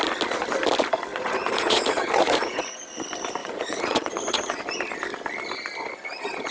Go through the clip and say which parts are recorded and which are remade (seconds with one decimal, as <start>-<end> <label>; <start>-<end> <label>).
0.0-1.1 recorded; 1.1-2.8 remade; 2.8-3.4 recorded; 3.4-4.6 remade; 4.6-6.5 recorded